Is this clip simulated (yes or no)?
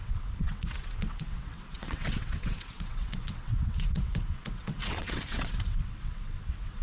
yes